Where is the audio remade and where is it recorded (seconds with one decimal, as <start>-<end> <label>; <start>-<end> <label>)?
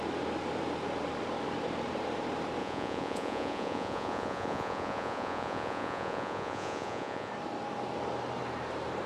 0.0-2.6 recorded; 2.6-7.3 remade; 7.3-9.1 recorded